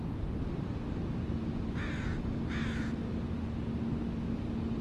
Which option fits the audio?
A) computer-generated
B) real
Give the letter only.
B